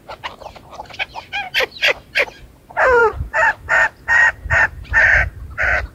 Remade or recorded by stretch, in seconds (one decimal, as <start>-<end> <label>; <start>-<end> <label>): 0.0-3.0 recorded; 3.0-5.3 remade; 5.3-5.9 recorded